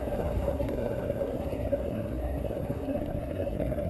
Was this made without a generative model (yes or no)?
no